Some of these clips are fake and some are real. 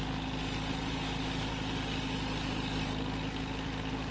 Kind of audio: real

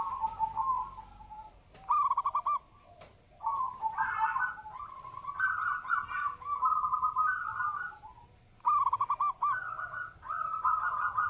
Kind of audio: real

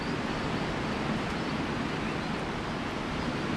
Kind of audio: real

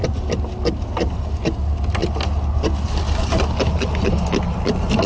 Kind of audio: real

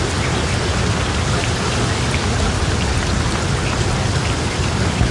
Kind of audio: real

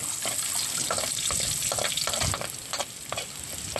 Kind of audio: real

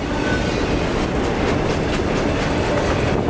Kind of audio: real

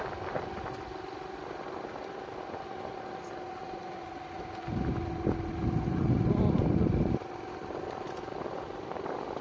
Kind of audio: real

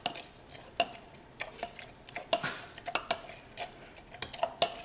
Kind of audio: real